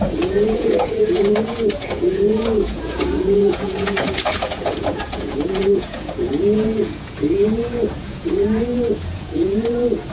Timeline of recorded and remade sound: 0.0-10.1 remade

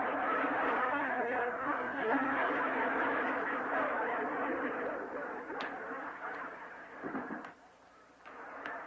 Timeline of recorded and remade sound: 0.0-0.8 recorded; 0.8-2.5 remade; 2.5-8.9 recorded

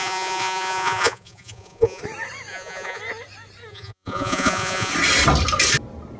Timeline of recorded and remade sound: 0.0-2.0 remade; 2.0-2.5 recorded; 2.5-3.0 remade; 3.0-3.7 recorded; 3.7-4.9 remade; 4.9-6.2 recorded

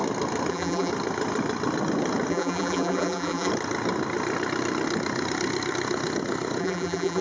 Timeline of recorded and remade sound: 0.0-0.5 recorded; 0.5-0.9 remade; 0.9-2.3 recorded; 2.3-3.5 remade; 3.5-6.6 recorded; 6.6-7.2 remade

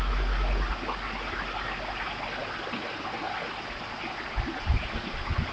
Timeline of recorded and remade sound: 0.0-2.4 recorded; 2.4-4.9 remade; 4.9-5.5 recorded